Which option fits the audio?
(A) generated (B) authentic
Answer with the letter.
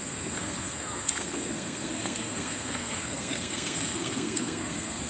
A